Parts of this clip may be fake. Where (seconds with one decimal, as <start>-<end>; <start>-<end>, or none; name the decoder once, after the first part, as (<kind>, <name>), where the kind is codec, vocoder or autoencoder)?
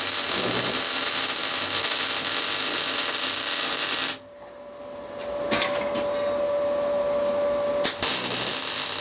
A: none